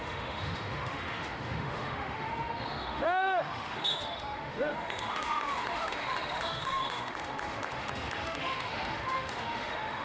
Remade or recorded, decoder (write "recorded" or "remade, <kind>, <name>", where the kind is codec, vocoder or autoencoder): remade, autoencoder, DAC-VAE